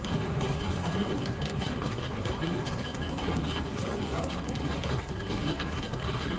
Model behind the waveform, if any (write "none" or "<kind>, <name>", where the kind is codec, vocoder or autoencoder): codec, SNAC